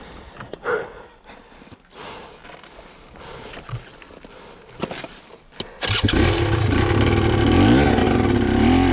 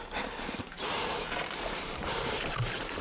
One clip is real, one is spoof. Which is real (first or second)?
first